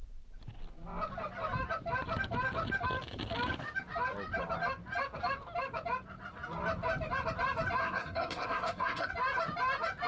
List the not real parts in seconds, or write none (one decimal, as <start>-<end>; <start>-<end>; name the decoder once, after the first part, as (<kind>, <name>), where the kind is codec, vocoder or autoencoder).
7.8-9.1 (codec, SNAC)